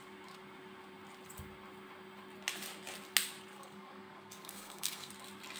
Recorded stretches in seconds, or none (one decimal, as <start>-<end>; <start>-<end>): 0.0-3.5; 5.1-5.6